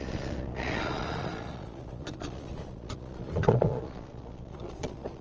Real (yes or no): no